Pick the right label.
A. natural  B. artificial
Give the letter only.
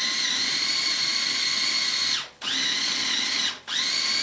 A